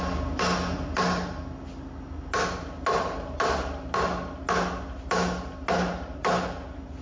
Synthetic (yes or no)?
no